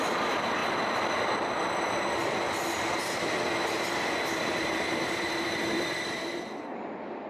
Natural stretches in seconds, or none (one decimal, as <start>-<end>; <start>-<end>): 0.6-1.6; 2.2-4.4